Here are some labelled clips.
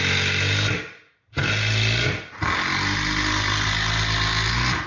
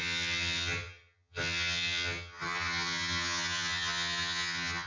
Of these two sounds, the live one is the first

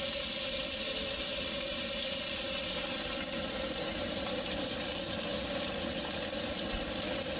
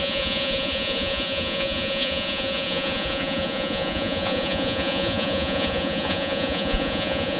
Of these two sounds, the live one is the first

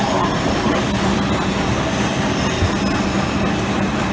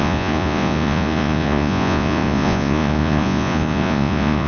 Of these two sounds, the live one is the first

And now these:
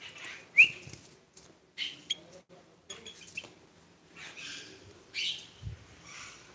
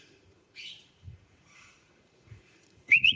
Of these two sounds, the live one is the first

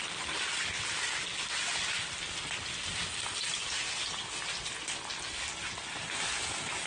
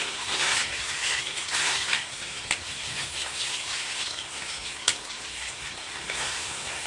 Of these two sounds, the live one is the first